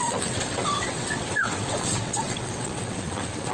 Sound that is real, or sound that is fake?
fake